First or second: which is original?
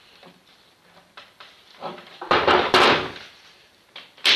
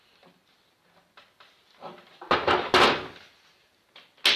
second